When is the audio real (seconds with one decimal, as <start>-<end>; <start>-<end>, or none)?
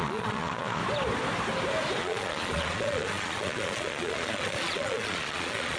0.8-2.0